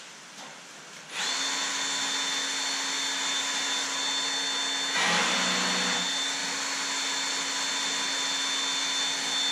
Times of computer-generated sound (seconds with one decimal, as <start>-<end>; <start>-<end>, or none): none